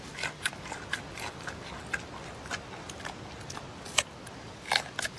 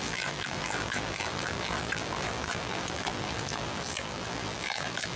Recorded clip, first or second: first